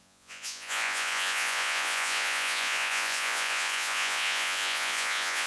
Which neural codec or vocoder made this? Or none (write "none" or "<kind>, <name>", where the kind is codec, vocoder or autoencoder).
vocoder, Vocos